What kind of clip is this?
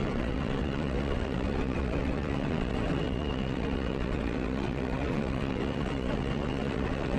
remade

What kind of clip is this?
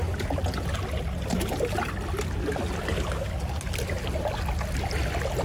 recorded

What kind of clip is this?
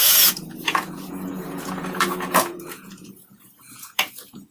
remade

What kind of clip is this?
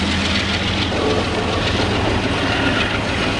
recorded